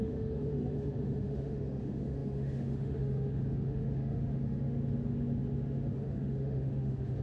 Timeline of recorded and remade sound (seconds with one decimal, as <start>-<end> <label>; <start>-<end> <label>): 0.0-7.2 remade